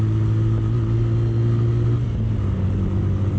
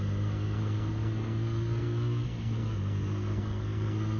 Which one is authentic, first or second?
first